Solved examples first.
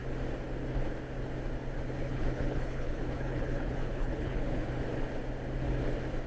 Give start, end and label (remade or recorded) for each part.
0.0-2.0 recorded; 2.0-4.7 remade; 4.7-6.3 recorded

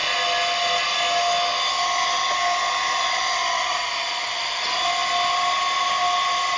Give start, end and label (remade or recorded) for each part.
0.0-6.6 recorded